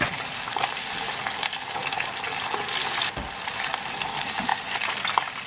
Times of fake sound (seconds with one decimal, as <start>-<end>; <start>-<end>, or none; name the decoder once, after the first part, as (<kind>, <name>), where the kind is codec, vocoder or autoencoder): none